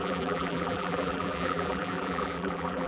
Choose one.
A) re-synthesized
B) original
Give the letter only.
A